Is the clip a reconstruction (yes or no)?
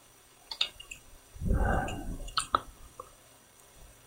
yes